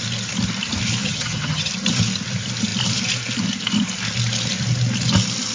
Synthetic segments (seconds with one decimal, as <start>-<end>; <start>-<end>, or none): 1.0-1.7